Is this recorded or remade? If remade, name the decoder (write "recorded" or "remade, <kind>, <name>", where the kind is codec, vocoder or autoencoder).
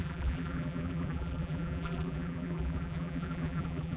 remade, vocoder, BigVGAN v2